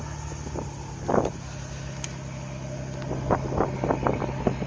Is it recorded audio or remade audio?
recorded